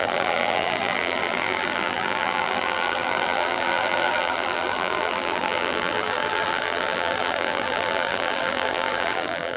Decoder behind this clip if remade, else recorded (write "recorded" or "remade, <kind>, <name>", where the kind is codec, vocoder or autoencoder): remade, vocoder, BigVGAN v2